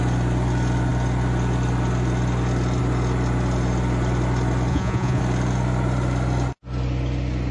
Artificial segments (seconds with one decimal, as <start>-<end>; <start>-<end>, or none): 4.7-5.2